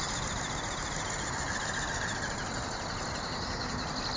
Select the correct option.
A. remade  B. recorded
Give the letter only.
B